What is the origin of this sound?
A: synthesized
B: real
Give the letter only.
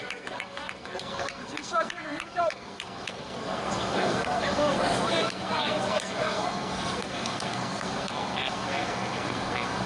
A